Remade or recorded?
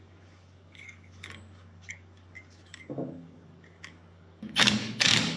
remade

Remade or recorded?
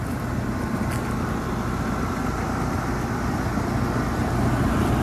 recorded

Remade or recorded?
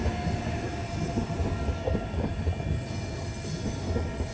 recorded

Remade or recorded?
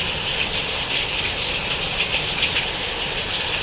remade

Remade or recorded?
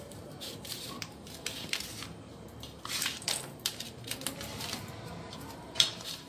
remade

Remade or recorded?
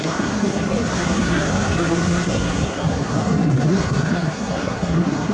remade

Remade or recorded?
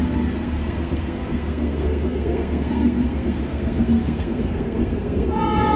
remade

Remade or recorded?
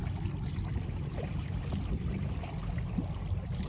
recorded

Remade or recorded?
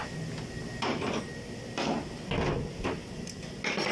recorded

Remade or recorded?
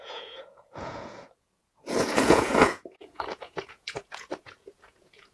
remade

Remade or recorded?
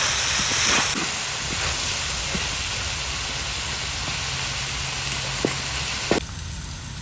recorded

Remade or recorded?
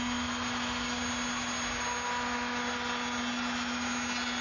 recorded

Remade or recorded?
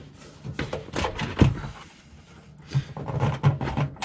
recorded